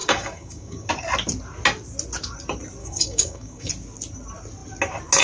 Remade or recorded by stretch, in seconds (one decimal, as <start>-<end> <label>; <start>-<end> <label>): 0.0-0.9 remade; 0.9-2.8 recorded; 2.8-3.7 remade; 3.7-5.2 recorded